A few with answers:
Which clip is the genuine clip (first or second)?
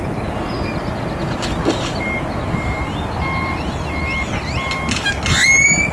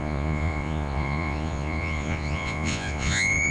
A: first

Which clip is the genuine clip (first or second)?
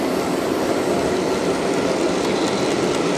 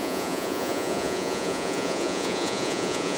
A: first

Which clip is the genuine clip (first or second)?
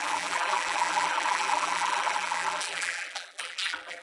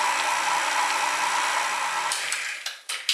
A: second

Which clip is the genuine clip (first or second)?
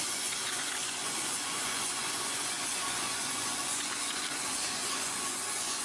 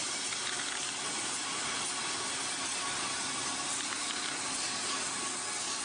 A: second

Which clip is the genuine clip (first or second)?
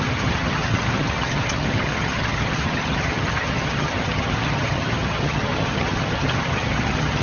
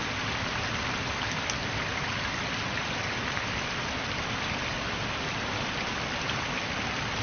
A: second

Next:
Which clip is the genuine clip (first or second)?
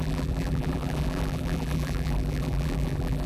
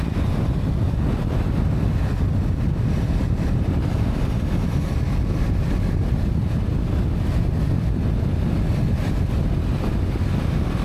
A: second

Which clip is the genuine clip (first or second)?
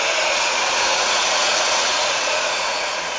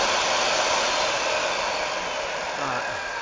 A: second